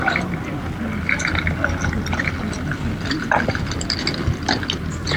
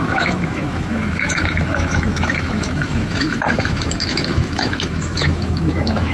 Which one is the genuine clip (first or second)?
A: first